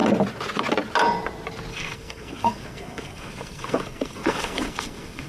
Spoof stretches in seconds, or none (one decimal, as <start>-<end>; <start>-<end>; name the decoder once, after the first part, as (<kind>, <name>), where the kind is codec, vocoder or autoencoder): 1.7-5.3 (codec, SNAC)